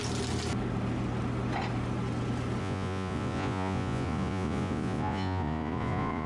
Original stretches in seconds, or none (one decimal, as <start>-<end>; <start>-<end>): 0.0-2.6